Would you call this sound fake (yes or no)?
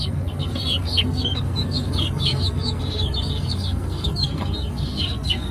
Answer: yes